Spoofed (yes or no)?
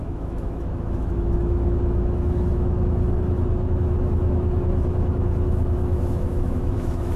yes